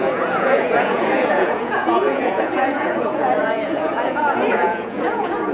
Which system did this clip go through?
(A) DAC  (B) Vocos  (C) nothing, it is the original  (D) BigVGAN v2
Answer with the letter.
B